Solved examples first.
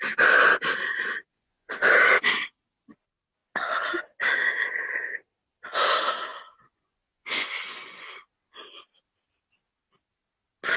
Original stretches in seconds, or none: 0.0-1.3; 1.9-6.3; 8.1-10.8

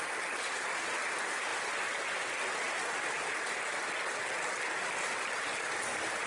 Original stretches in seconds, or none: 0.0-6.3